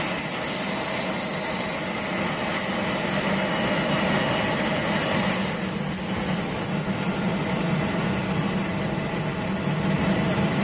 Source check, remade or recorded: recorded